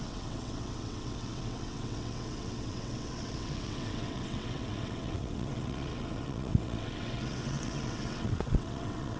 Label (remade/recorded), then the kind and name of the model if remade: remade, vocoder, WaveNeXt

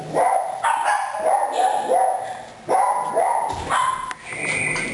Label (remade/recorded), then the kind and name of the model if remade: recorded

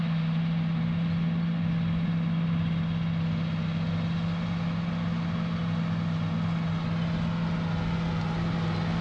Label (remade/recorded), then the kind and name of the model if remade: recorded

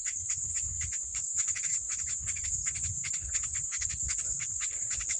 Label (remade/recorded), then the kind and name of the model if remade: remade, codec, HILCodec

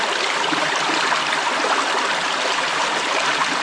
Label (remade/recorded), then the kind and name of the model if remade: recorded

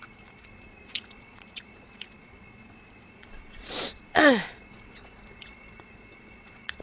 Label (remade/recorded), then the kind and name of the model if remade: remade, vocoder, Vocos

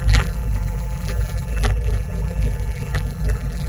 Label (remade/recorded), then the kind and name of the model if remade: remade, vocoder, BigVGAN v2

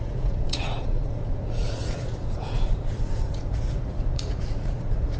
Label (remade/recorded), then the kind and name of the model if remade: remade, vocoder, Vocos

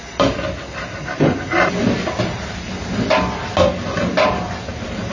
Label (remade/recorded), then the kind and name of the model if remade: recorded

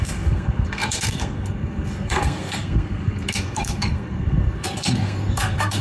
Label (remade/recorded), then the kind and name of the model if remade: remade, codec, SNAC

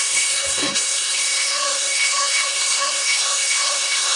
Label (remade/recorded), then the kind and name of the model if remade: remade, codec, SNAC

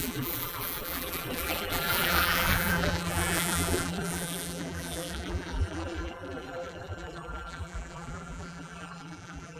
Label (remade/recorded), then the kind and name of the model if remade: remade, vocoder, BigVGAN v2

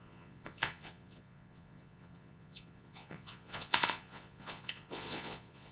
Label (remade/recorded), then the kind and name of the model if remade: remade, vocoder, Vocos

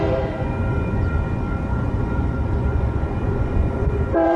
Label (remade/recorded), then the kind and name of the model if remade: remade, vocoder, Vocos